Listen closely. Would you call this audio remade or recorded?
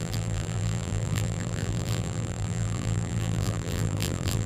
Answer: remade